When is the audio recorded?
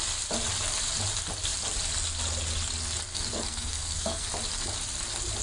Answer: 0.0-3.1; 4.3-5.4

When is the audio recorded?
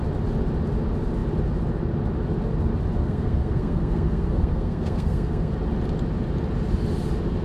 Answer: 0.0-3.0; 5.5-7.4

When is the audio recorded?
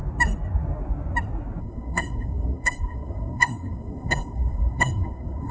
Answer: 0.0-1.6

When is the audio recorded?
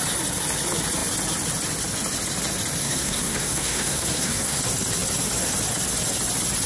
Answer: 0.0-2.8; 4.6-6.7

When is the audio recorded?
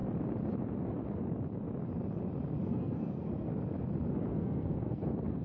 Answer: 0.0-2.6; 3.5-4.3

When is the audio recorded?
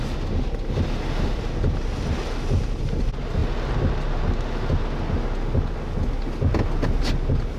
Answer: 0.0-7.6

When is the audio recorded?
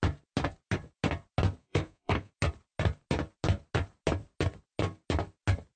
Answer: 0.0-1.6; 2.3-5.8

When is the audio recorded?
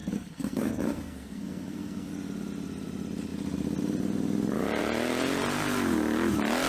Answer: 2.1-6.7